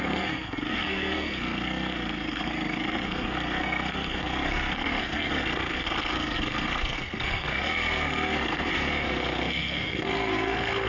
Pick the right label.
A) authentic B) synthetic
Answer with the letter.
B